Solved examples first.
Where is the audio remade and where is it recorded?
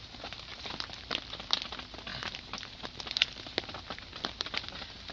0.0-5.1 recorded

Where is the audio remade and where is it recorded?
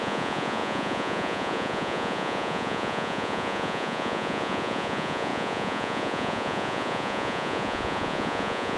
0.0-8.8 remade